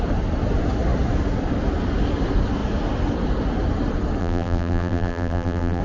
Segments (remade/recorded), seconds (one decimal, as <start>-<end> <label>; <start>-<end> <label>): 0.0-4.2 recorded; 4.2-5.8 remade